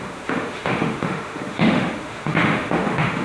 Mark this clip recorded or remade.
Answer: remade